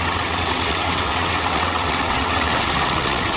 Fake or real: fake